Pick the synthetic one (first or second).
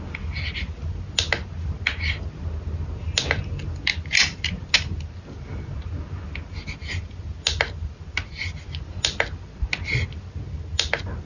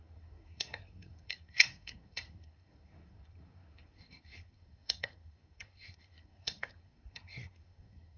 second